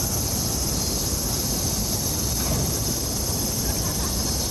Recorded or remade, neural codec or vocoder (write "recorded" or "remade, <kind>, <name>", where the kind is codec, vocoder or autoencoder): remade, vocoder, BigVGAN v2